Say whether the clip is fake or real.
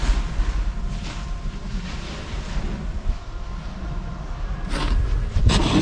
real